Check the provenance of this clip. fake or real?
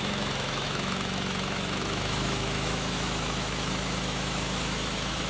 fake